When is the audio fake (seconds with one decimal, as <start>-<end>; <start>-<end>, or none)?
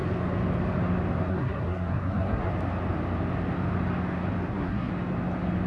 1.3-2.5; 4.5-4.9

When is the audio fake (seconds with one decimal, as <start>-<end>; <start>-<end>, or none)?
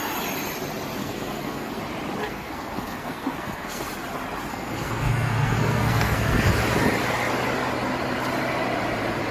1.0-1.8; 2.2-3.9; 4.5-6.5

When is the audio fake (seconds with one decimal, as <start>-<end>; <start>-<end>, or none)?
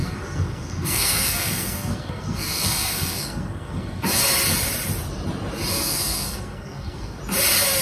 0.0-4.2; 5.7-7.2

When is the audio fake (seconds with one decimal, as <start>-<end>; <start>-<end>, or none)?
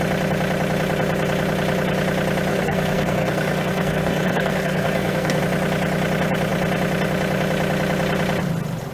2.5-5.4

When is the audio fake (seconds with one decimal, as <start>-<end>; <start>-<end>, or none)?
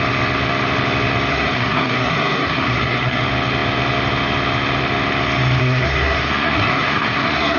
1.3-3.2; 5.6-7.6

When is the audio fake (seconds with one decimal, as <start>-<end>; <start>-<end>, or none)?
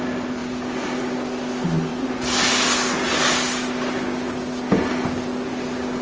none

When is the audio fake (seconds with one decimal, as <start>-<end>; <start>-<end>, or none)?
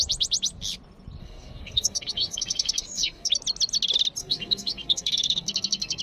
1.2-3.3; 4.2-6.0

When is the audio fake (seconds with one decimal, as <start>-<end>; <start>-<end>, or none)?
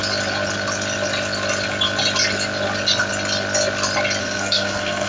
4.2-5.1